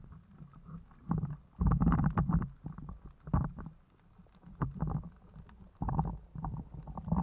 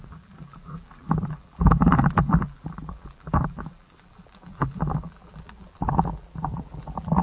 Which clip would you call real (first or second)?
first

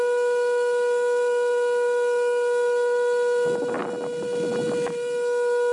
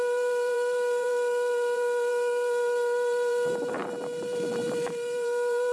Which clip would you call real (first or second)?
first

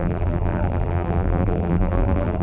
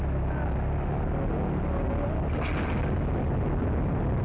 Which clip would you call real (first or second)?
second